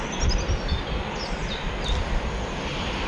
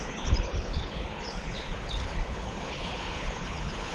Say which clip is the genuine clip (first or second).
first